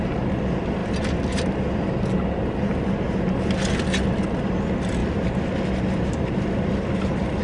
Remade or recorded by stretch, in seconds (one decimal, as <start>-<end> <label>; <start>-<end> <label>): 0.0-5.0 recorded; 5.0-7.4 remade